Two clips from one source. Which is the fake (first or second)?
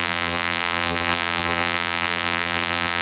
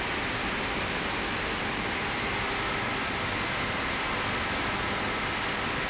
first